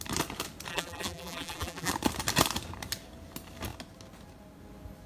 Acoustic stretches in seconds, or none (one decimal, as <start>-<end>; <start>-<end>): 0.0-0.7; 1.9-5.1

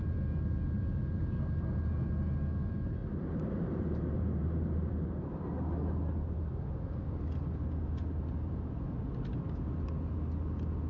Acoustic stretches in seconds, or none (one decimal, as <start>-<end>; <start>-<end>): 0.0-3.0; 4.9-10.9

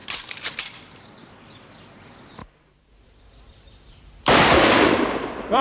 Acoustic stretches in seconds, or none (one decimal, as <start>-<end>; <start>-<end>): 0.6-2.4

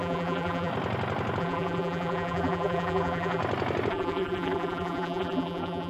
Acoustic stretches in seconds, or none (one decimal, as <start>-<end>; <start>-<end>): 0.7-1.4; 3.4-3.9

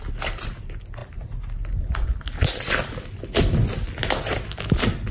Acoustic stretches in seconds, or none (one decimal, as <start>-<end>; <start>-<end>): 0.0-5.1